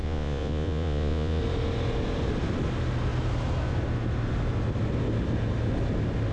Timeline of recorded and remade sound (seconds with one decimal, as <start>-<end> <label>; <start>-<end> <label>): 0.0-1.4 remade; 1.4-6.3 recorded

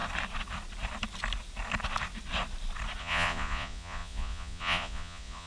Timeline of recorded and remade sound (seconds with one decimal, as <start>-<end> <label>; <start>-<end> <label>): 0.0-3.0 recorded; 3.0-5.5 remade

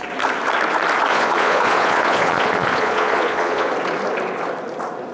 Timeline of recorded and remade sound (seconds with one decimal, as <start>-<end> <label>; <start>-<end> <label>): 0.0-1.1 recorded; 1.1-3.7 remade; 3.7-5.1 recorded

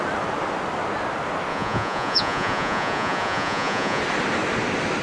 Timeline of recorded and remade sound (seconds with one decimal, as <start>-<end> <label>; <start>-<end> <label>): 0.0-1.5 recorded; 1.5-4.0 remade; 4.0-5.0 recorded

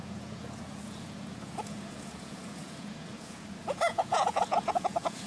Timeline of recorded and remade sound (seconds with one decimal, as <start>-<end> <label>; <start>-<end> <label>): 0.0-5.3 remade